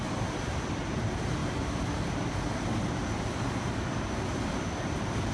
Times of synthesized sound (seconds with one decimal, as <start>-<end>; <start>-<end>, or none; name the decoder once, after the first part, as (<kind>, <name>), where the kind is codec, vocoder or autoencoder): none